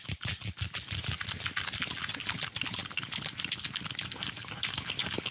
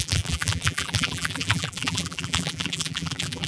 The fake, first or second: second